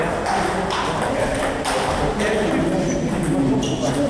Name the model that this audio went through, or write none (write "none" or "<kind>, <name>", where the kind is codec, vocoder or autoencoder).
none